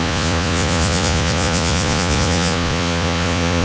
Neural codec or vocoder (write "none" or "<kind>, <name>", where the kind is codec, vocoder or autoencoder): vocoder, Vocos